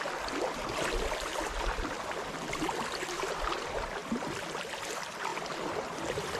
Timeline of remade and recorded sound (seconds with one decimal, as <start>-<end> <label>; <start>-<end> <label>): 0.0-6.4 recorded